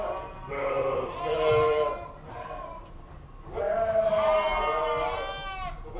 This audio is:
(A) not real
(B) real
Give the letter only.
B